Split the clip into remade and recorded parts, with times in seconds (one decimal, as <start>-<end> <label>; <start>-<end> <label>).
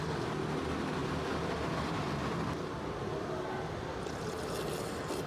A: 0.0-5.3 recorded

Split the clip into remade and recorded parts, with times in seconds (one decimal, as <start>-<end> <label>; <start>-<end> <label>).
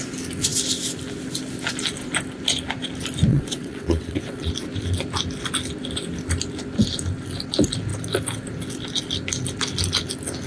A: 0.0-3.3 recorded; 3.3-4.5 remade; 4.5-10.5 recorded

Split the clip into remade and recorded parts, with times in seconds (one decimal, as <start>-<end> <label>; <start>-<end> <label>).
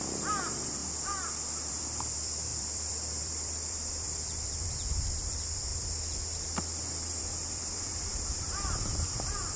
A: 0.0-0.8 remade; 0.8-1.6 recorded; 1.6-5.7 remade; 5.7-7.2 recorded; 7.2-9.6 remade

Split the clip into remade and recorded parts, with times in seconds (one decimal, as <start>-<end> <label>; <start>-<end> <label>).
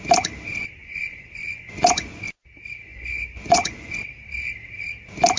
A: 0.0-0.8 recorded; 0.8-2.2 remade; 2.2-2.9 recorded; 2.9-3.9 remade; 3.9-5.4 recorded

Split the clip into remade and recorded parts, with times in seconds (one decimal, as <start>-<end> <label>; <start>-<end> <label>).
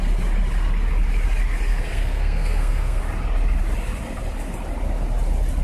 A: 0.0-1.7 recorded; 1.7-3.0 remade; 3.0-5.6 recorded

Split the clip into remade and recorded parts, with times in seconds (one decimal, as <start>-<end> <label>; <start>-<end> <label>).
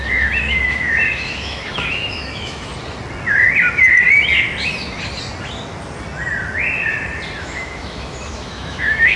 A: 0.0-2.7 remade; 2.7-7.4 recorded; 7.4-9.2 remade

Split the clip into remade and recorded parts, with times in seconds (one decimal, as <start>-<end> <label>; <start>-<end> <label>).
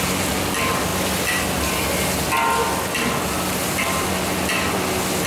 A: 0.0-5.3 recorded